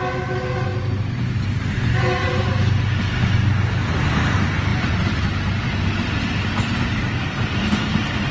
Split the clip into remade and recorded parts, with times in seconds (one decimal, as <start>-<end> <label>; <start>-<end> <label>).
0.0-8.3 recorded